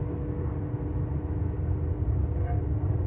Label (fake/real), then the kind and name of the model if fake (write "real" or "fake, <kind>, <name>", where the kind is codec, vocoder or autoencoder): real